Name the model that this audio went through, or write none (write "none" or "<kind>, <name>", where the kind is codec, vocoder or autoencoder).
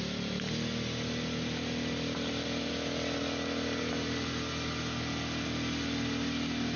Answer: none